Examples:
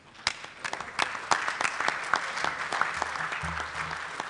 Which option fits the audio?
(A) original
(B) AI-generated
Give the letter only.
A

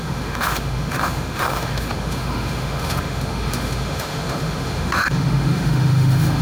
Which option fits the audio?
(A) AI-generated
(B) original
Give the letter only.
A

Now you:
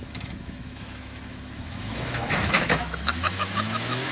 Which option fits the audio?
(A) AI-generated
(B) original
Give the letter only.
A